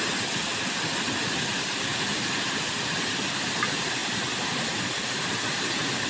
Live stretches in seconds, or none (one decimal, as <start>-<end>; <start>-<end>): 0.0-6.1